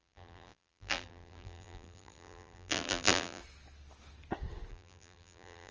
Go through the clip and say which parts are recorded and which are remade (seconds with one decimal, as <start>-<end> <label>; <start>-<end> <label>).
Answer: 0.0-3.4 remade; 3.4-4.7 recorded; 4.7-5.7 remade